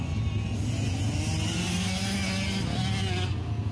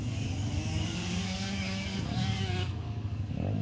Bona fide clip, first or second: first